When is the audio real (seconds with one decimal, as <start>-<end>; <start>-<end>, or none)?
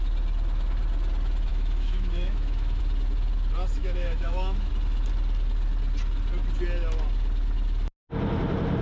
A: 0.0-1.5; 2.8-3.8; 4.7-8.8